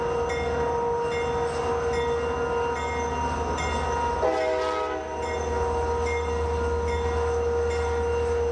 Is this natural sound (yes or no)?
yes